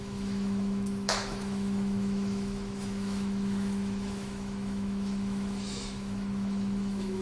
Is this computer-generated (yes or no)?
yes